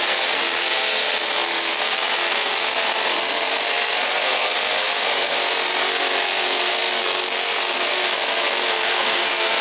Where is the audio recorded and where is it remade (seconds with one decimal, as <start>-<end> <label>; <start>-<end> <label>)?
0.0-9.6 remade